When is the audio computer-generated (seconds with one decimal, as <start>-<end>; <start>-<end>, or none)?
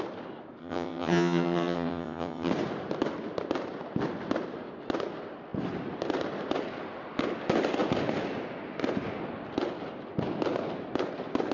0.6-2.5